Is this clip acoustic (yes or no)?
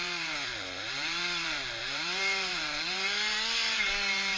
no